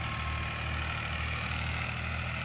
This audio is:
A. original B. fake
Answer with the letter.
A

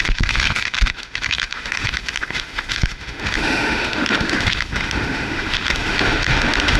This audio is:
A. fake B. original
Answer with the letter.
A